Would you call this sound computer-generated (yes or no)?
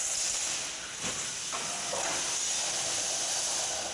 no